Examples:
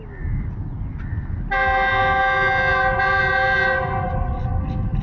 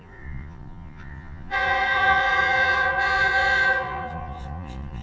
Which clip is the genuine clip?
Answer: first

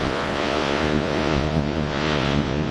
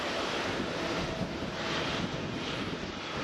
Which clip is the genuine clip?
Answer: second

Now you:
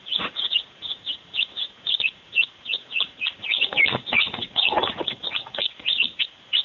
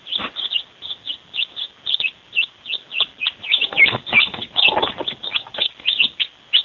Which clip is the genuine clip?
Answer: second